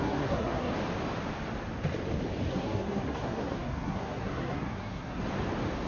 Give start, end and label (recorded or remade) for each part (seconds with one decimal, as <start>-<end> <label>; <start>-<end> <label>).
0.0-0.7 remade; 0.7-2.5 recorded; 2.5-5.2 remade; 5.2-5.9 recorded